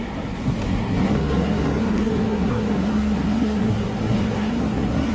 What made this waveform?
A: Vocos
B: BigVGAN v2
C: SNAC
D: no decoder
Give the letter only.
C